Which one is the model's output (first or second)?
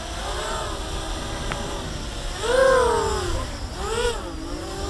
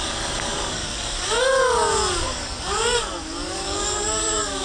second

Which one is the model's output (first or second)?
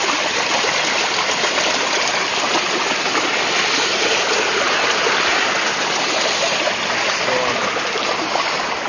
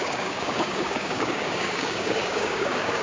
second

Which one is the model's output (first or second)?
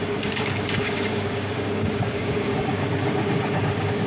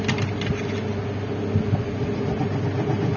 first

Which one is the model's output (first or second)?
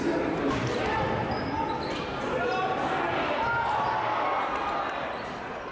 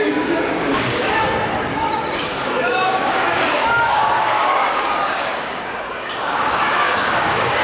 second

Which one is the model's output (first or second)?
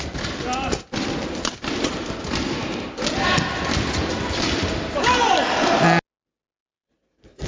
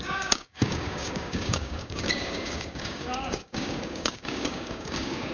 second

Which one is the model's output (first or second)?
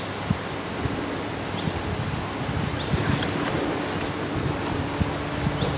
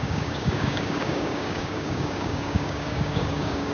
second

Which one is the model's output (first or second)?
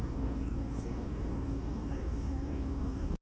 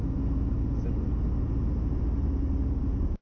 first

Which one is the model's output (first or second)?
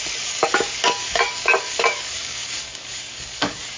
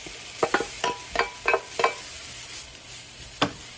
first